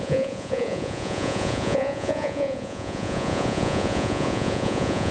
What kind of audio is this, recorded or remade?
remade